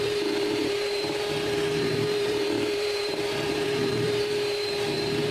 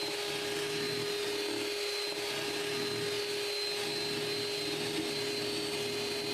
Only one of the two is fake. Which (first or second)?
first